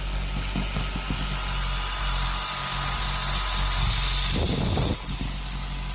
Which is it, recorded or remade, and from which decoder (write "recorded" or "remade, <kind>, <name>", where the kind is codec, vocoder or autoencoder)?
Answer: recorded